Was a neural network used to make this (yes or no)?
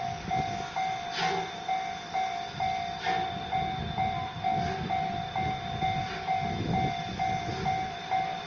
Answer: no